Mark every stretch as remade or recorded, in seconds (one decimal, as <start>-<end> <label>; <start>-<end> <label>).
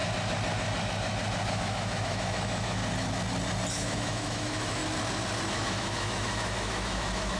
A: 0.0-1.5 recorded; 1.5-2.8 remade; 2.8-3.7 recorded; 3.7-4.8 remade; 4.8-5.5 recorded; 5.5-7.4 remade